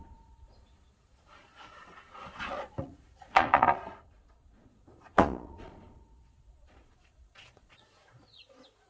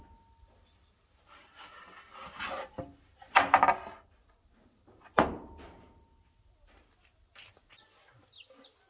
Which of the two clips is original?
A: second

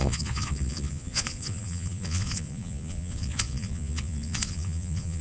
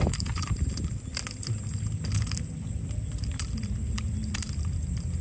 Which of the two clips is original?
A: second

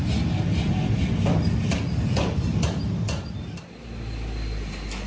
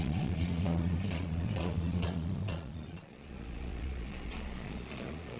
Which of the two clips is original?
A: first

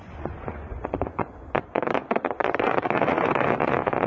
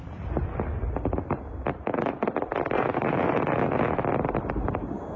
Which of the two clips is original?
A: second